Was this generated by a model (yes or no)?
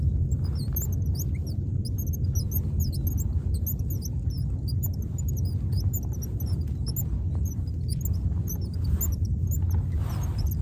no